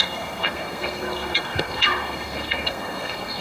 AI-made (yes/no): yes